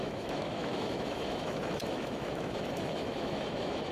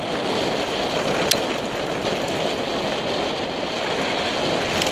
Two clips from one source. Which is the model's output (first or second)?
first